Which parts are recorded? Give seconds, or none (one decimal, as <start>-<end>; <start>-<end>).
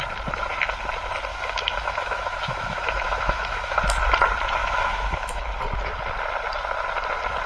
0.0-1.3; 3.8-4.6; 5.4-7.5